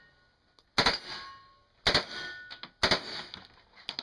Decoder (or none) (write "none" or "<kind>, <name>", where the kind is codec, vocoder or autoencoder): none